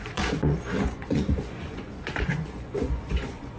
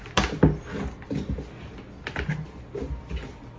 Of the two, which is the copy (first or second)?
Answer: first